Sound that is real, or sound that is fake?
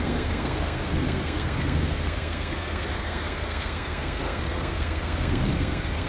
fake